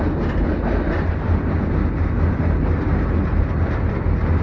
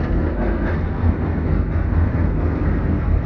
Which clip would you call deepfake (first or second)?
second